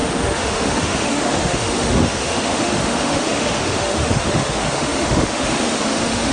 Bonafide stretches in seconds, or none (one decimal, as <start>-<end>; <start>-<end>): none